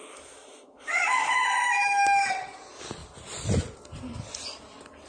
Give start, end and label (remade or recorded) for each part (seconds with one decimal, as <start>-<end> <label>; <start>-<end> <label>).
0.0-2.3 remade; 2.3-5.1 recorded